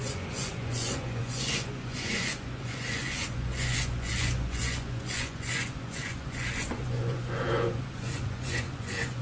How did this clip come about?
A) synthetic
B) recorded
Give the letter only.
A